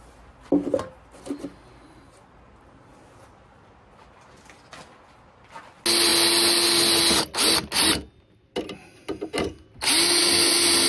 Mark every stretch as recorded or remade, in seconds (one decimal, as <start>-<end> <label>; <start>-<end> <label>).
0.0-10.9 recorded